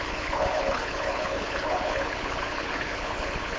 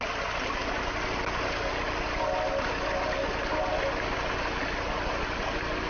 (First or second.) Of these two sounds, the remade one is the first